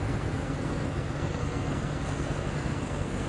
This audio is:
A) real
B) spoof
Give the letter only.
B